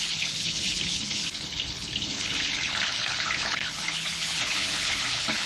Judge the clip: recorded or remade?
remade